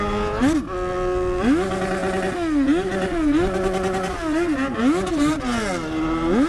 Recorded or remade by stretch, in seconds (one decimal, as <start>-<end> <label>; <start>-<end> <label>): 0.0-6.5 recorded